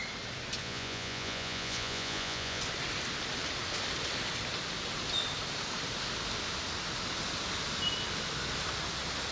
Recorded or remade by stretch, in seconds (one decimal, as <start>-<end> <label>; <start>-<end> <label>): 0.0-0.6 recorded; 0.6-2.6 remade; 2.6-9.3 recorded